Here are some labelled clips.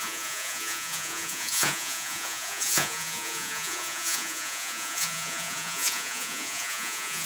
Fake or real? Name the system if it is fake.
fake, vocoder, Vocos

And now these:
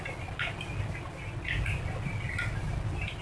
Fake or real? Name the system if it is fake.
real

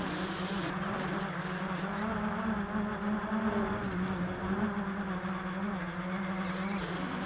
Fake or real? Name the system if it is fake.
real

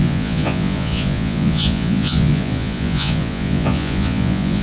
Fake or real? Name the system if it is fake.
fake, vocoder, Vocos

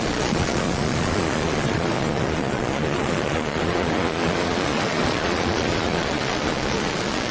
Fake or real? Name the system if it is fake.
fake, vocoder, Vocos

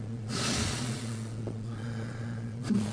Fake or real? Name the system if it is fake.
fake, vocoder, Vocos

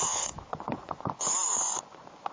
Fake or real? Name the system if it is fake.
fake, vocoder, Vocos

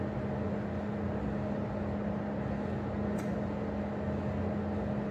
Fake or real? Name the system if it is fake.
real